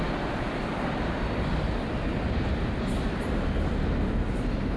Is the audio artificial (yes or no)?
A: no